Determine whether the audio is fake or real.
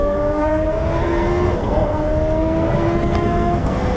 fake